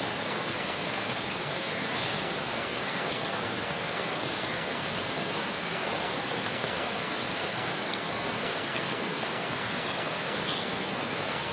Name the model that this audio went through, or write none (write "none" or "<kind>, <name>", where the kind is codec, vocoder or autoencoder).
codec, SNAC